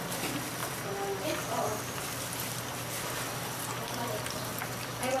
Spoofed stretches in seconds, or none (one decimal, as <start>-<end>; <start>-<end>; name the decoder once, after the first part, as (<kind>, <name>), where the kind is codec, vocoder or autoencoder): none